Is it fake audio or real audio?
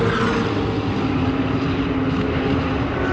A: real